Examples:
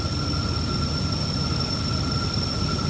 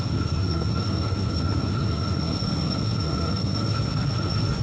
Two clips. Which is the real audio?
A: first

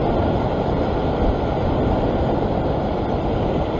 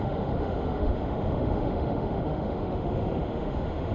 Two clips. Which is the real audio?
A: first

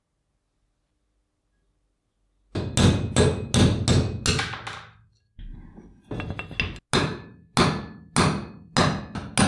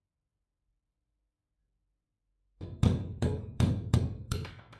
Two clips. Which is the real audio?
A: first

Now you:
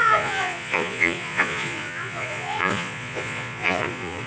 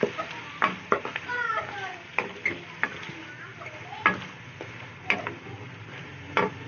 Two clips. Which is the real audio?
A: second